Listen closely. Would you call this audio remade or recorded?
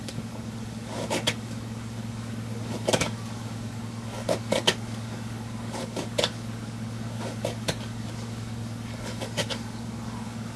remade